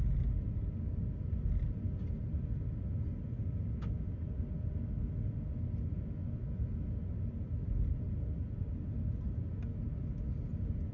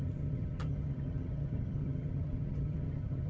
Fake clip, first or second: second